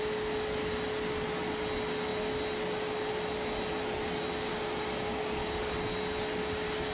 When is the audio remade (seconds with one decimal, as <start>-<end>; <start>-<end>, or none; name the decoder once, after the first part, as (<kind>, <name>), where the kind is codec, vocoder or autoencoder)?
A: 4.5-5.7 (codec, DAC)